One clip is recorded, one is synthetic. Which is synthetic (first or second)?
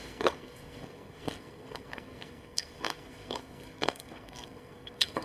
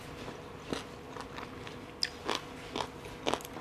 first